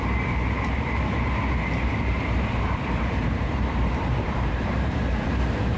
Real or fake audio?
fake